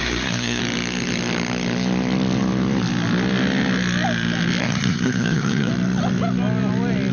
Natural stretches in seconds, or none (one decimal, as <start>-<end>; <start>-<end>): 0.6-4.6; 5.7-7.1

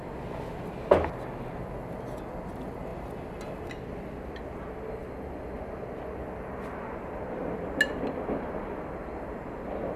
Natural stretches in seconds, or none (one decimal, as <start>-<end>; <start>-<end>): 0.0-10.0